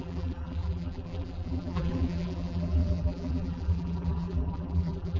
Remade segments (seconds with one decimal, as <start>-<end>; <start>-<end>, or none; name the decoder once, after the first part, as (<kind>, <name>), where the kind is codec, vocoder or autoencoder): 0.0-5.2 (vocoder, BigVGAN v2)